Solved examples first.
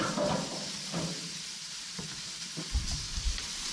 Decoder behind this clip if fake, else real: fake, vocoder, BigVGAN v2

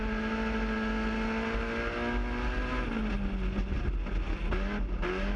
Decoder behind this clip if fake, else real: real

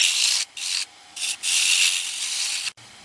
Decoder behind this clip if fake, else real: real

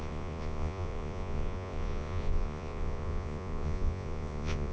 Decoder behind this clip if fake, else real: fake, vocoder, Vocos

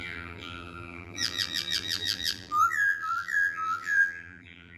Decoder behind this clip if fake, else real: fake, vocoder, BigVGAN v2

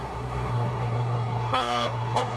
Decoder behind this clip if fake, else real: fake, codec, SNAC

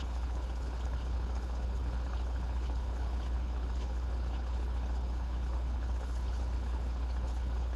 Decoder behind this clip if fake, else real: fake, codec, HILCodec